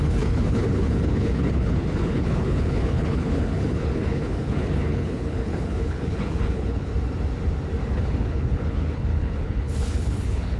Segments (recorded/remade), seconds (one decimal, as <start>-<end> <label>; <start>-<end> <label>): 0.0-6.9 remade; 6.9-7.9 recorded; 7.9-10.6 remade